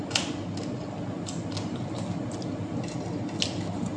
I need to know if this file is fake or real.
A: real